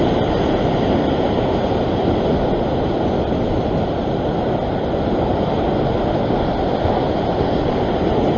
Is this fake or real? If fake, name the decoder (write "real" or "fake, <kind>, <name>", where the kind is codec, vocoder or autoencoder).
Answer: real